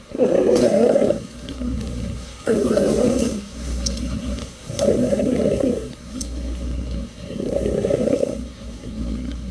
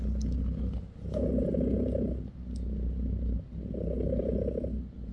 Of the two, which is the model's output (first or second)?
first